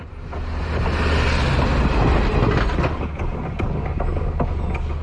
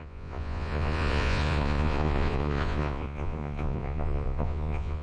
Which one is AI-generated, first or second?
second